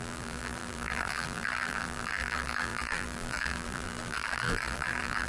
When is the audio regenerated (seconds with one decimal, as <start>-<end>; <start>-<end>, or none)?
0.0-5.3